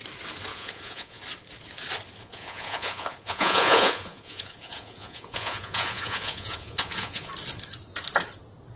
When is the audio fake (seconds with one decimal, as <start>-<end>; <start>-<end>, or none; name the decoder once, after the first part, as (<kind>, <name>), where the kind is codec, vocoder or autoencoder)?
0.5-1.2 (vocoder, Vocos); 2.2-7.3